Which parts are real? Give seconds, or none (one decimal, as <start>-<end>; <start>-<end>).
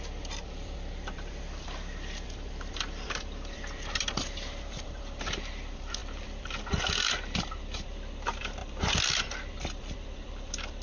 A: none